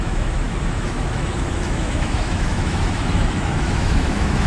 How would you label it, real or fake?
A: fake